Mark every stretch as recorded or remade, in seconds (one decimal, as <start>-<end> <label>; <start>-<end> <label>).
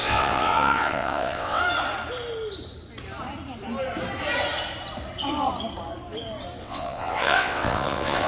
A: 0.0-1.6 remade; 1.6-6.6 recorded; 6.6-8.3 remade